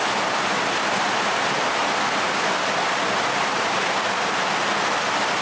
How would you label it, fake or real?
real